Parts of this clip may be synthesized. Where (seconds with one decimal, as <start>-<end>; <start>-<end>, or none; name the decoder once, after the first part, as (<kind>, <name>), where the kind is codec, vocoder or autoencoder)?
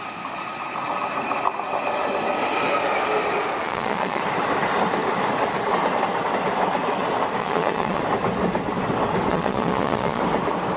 3.6-4.2 (vocoder, Vocos); 7.4-8.0; 9.3-10.2